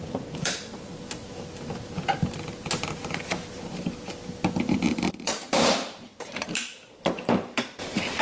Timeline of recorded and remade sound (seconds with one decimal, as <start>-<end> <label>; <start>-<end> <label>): 0.0-0.9 remade; 0.9-4.6 recorded; 4.6-8.2 remade